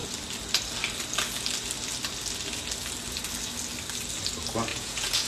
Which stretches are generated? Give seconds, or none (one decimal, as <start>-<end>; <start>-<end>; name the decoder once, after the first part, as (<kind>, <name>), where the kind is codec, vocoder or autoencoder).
4.7-5.3 (vocoder, Vocos)